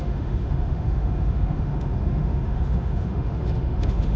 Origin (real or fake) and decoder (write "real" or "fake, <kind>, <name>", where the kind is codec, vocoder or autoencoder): fake, autoencoder, DAC-VAE